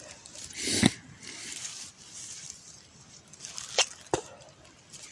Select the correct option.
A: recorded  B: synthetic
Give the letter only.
A